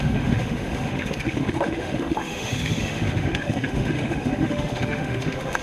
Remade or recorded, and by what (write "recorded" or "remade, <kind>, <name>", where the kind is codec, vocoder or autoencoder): remade, autoencoder, DAC-VAE